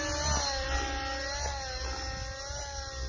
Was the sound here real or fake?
real